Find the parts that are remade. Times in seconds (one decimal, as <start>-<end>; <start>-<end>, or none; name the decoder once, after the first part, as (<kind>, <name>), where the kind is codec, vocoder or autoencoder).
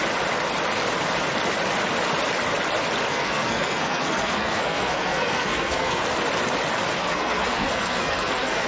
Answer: 3.1-6.0 (codec, SNAC); 7.0-8.7